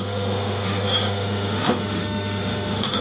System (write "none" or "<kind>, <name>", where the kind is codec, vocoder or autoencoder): autoencoder, DAC-VAE